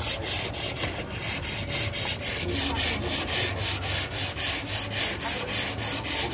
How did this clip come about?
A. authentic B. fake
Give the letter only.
A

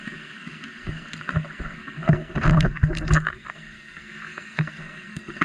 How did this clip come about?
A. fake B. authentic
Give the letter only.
A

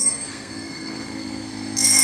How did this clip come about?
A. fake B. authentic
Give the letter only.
A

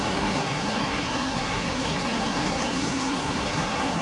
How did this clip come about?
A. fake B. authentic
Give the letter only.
A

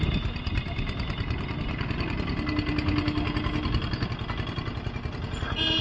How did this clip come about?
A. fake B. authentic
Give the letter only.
B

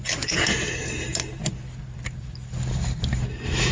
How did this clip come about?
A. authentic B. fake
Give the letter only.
A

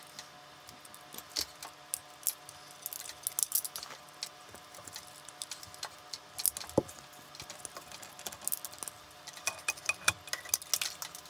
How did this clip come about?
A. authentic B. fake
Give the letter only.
A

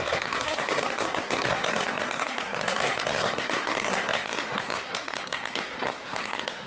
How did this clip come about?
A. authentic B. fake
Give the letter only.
B